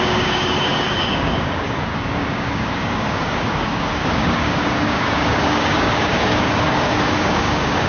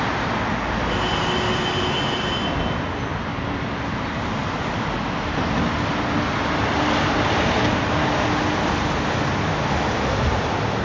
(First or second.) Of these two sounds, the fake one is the first